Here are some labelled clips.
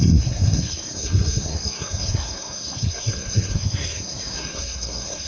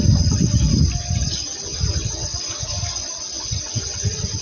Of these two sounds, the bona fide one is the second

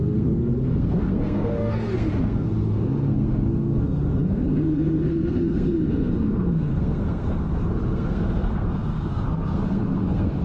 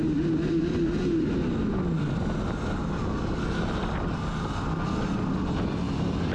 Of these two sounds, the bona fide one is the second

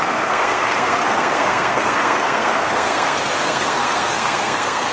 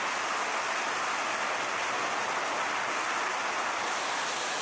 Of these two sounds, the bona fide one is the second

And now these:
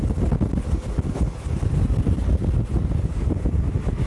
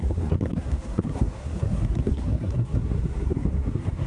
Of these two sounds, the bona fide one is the first